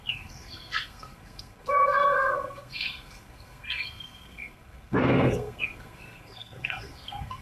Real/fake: fake